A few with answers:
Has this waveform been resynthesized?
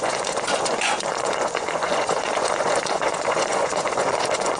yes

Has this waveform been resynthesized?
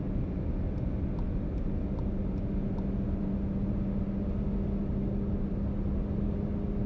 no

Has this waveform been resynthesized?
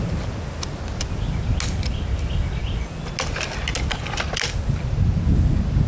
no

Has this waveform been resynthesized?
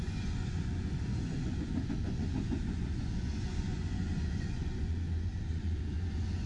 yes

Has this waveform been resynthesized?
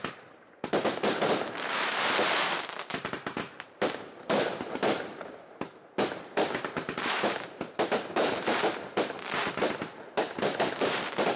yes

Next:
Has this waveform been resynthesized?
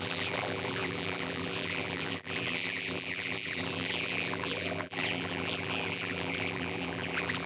yes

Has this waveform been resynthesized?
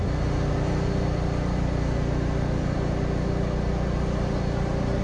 no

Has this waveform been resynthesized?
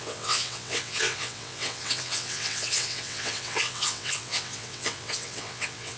yes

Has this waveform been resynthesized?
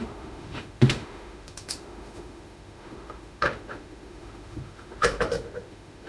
yes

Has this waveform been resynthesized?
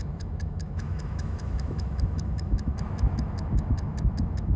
yes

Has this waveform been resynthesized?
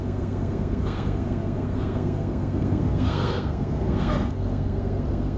yes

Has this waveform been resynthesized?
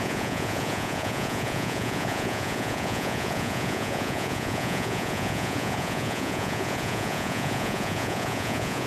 yes